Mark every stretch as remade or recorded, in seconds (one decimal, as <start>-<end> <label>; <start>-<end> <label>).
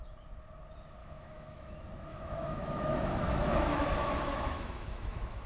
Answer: 0.0-1.0 recorded; 1.0-1.7 remade; 1.7-2.1 recorded; 2.1-5.5 remade